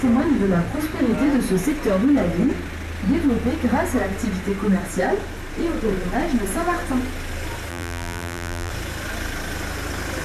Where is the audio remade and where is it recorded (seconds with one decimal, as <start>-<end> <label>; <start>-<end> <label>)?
0.0-7.7 recorded; 7.7-8.7 remade; 8.7-10.2 recorded